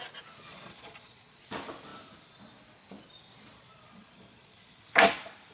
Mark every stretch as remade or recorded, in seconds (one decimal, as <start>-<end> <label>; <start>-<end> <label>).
0.0-0.5 recorded; 0.5-1.4 remade; 1.4-3.5 recorded; 3.5-4.8 remade; 4.8-5.5 recorded